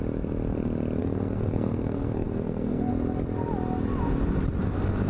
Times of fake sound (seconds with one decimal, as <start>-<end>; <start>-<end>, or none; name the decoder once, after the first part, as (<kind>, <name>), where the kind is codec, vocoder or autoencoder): 1.0-2.9 (codec, SNAC)